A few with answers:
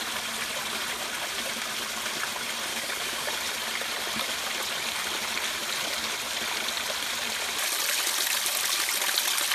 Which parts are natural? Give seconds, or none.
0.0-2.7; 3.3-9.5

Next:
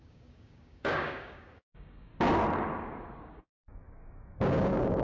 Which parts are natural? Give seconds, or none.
2.1-3.2

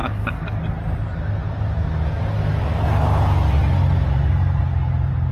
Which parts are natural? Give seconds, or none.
0.6-5.3

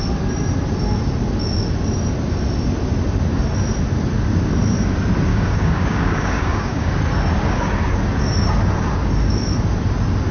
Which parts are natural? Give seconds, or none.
0.0-5.3; 6.9-10.3

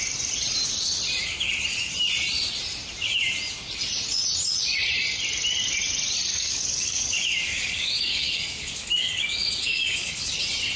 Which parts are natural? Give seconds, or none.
0.0-6.3; 10.3-10.8

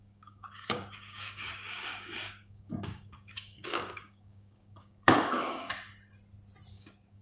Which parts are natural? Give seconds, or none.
5.7-6.7